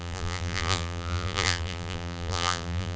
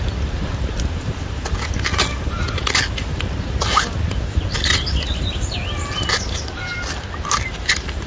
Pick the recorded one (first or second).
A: second